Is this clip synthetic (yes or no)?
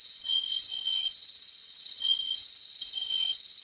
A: yes